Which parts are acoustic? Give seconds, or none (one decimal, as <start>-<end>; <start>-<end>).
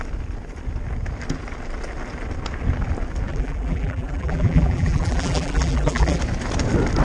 0.0-3.3; 6.2-7.0